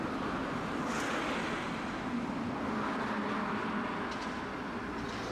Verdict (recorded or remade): recorded